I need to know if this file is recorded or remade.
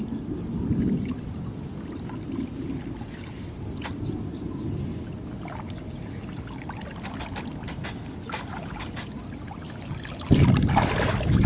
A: recorded